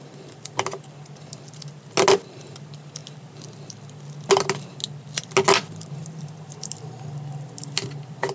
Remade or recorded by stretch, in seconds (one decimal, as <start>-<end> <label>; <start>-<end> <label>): 0.0-8.3 recorded